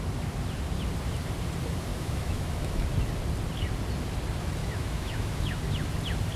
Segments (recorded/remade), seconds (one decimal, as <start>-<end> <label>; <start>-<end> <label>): 0.0-1.9 recorded; 1.9-2.8 remade; 2.8-4.6 recorded; 4.6-5.6 remade; 5.6-6.4 recorded